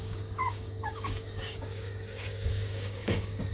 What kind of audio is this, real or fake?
fake